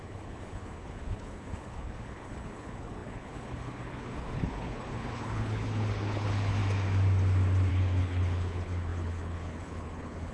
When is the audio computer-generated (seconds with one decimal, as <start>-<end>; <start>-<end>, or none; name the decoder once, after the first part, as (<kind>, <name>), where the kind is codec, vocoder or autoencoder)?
0.0-6.6 (codec, HILCodec); 7.7-10.3